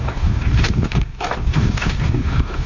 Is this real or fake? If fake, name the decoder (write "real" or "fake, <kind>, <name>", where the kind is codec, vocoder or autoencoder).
fake, codec, DAC